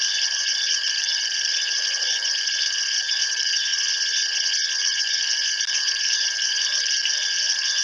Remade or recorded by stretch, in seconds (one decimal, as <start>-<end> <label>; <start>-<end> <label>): 0.0-3.7 remade; 3.7-4.8 recorded; 4.8-7.8 remade

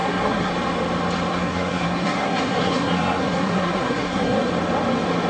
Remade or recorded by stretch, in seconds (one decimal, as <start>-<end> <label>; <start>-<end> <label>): 0.0-0.5 remade; 0.5-1.3 recorded; 1.3-4.5 remade; 4.5-5.3 recorded

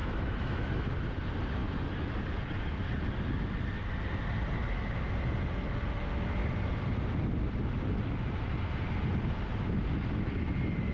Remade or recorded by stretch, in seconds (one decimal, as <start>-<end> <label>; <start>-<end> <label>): 0.0-1.0 remade; 1.0-1.6 recorded; 1.6-2.1 remade; 2.1-10.9 recorded